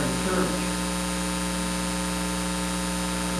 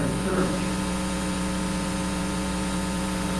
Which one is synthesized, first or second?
second